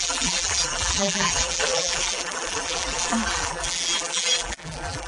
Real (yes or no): no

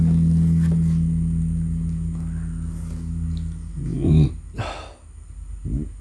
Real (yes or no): yes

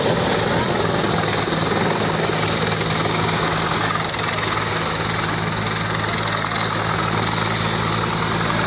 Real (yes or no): yes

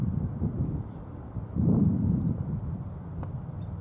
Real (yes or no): no